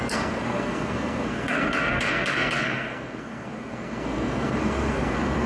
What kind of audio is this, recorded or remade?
remade